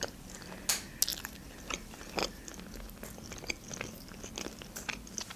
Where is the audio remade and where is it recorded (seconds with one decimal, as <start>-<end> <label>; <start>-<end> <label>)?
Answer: 0.0-5.4 recorded